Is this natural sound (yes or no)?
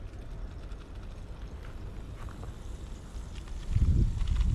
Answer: yes